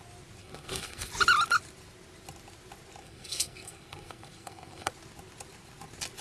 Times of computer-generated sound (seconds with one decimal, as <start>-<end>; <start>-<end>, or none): 0.4-1.1; 3.0-4.9